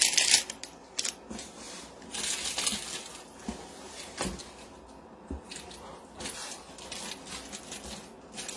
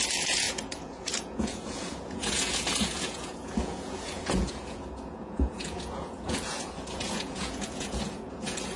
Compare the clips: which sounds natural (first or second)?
first